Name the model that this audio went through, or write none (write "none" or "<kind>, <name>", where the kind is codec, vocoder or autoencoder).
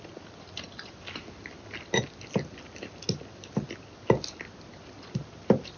none